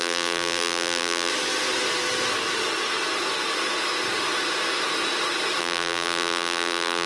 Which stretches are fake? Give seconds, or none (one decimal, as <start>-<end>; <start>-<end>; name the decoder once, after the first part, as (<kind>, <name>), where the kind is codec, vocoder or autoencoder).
0.0-1.3 (vocoder, BigVGAN v2); 5.6-7.1